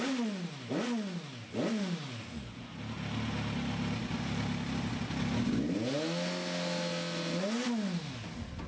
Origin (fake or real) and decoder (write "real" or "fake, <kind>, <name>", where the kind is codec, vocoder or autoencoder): real